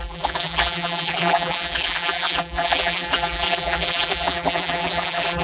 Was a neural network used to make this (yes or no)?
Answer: yes